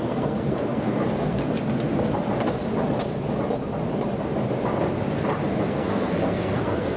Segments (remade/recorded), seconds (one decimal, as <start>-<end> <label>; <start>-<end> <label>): 0.0-1.4 remade; 1.4-5.6 recorded; 5.6-7.0 remade